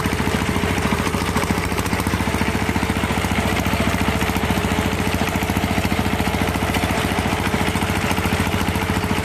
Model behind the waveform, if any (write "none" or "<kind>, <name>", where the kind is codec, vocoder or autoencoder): vocoder, BigVGAN v2